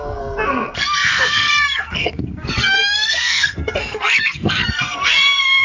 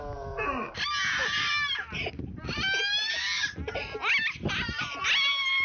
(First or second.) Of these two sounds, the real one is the second